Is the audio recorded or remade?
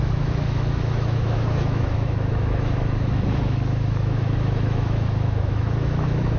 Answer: remade